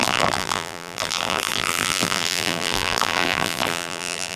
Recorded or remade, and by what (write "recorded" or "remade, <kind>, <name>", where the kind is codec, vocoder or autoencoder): remade, vocoder, BigVGAN v2